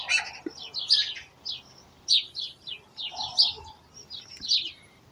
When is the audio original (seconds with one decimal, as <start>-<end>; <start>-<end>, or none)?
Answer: 0.0-5.1